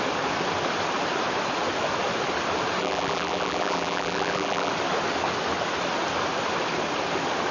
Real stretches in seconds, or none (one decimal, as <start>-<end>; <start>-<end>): 0.0-2.8; 4.7-7.5